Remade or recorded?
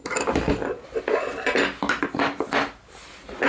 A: recorded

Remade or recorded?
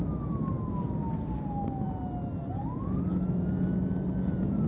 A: recorded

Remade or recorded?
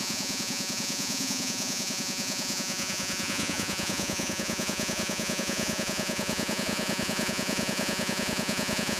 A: remade